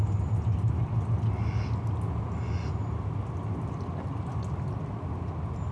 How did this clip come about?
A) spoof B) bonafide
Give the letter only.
B